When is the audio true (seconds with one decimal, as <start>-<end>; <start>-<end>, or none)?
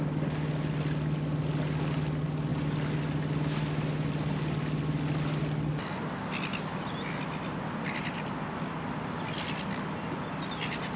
0.0-11.0